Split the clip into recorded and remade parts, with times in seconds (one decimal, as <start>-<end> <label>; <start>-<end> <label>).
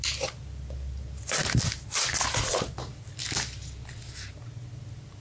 0.0-5.2 recorded